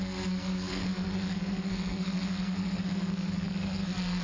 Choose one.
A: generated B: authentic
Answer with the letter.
A